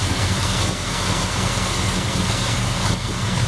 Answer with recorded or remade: remade